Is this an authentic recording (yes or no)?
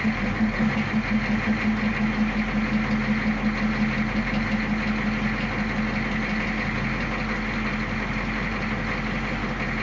yes